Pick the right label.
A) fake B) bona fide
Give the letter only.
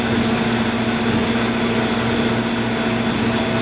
B